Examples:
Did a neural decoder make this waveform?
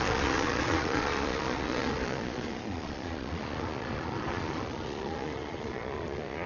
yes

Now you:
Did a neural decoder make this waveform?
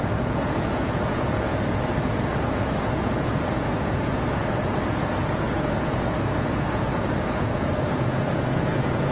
yes